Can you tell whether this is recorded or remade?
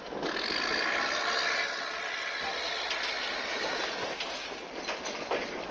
recorded